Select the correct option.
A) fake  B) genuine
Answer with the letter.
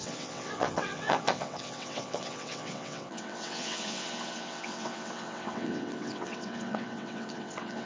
A